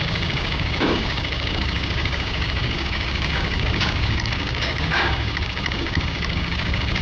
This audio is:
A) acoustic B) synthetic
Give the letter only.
B